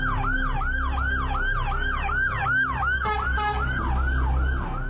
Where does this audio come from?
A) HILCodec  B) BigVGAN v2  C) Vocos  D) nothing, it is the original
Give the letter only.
D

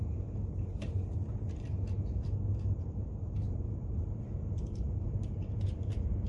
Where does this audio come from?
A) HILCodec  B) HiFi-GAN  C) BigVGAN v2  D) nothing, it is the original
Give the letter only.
C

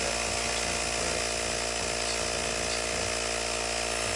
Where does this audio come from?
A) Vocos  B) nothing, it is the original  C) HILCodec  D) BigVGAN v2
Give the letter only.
B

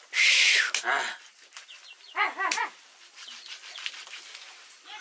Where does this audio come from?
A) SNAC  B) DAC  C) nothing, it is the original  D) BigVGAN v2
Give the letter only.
C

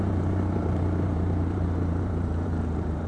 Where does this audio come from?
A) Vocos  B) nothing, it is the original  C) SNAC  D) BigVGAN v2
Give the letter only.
D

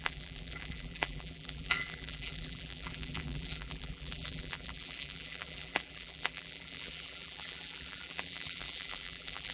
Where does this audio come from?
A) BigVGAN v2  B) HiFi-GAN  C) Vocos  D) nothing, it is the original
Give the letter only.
A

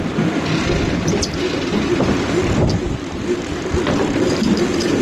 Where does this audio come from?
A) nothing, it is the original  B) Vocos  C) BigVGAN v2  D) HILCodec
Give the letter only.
C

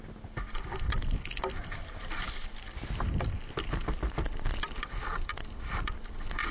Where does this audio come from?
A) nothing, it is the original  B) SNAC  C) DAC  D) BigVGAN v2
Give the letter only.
D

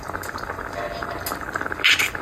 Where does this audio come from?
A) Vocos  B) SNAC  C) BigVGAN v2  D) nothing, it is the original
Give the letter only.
D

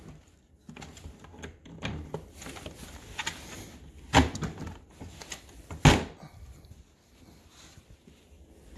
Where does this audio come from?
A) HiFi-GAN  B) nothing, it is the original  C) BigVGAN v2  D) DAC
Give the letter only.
B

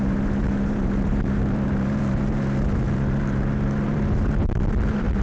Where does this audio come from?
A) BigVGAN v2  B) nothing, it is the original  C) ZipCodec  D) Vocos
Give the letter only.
A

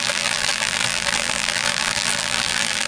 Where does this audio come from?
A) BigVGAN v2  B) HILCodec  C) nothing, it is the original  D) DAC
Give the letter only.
A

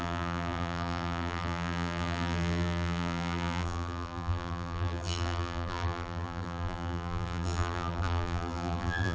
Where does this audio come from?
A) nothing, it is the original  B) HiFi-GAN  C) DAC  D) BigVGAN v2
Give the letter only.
D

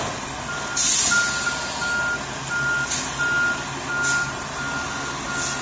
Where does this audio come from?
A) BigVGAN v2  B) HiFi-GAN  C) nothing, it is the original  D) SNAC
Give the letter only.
C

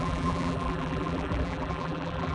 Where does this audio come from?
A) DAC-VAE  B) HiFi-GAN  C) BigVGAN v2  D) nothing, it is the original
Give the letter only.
C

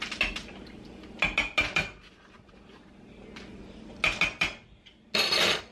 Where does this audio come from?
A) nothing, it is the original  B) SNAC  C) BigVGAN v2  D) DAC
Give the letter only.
A